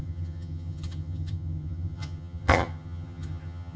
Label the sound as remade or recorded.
remade